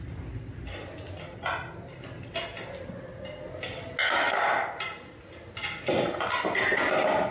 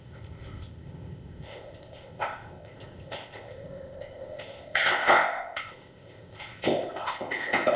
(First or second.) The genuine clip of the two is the first